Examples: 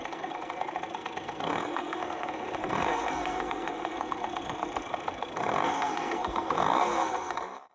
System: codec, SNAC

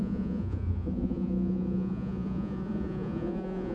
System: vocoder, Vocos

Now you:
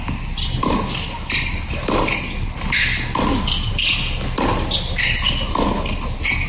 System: none